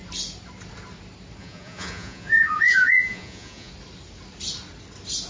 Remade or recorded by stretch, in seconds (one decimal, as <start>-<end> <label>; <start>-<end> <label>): 0.0-1.4 recorded; 1.4-3.7 remade; 3.7-5.3 recorded